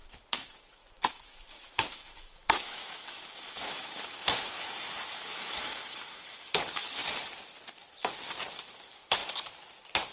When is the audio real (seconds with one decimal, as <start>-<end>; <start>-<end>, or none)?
7.0-8.6; 9.2-10.1